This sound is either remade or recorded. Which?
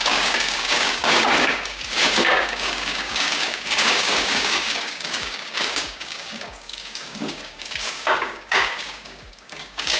remade